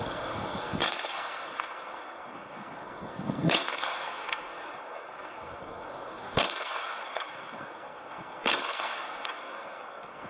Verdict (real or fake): fake